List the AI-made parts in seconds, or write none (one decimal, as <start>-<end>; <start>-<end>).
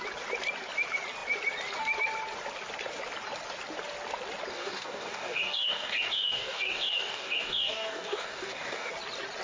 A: 4.5-8.9